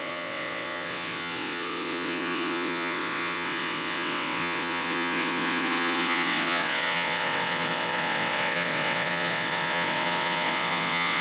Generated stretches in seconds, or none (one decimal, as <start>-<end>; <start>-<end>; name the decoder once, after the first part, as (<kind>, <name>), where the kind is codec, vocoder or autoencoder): 0.0-11.2 (vocoder, WaveNeXt)